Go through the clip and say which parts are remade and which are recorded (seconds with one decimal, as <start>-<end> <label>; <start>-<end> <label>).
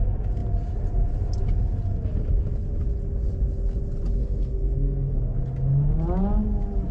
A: 0.0-4.2 recorded; 4.2-5.4 remade; 5.4-6.9 recorded